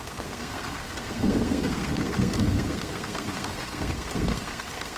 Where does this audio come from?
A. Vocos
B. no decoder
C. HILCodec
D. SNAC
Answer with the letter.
D